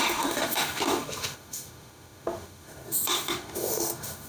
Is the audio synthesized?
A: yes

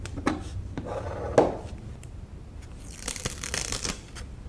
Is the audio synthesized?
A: no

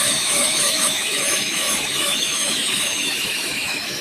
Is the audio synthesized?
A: yes